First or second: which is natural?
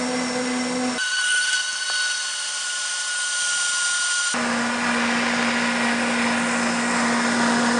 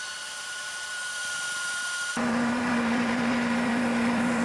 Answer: first